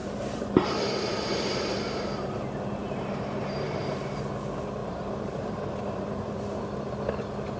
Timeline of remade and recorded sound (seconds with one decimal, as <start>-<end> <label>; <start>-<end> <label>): 0.0-2.3 remade; 2.3-2.8 recorded; 2.8-4.0 remade; 4.0-4.8 recorded; 4.8-6.3 remade; 6.3-7.6 recorded